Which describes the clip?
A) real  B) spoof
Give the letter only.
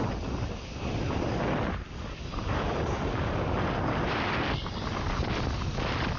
A